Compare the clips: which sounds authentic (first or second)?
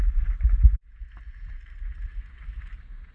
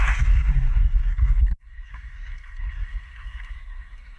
first